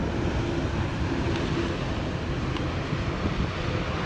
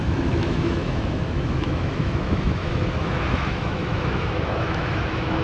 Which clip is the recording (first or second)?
first